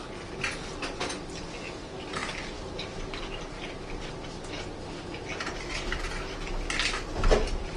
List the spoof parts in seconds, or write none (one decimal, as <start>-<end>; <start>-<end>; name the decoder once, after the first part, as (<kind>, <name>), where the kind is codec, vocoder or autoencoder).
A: none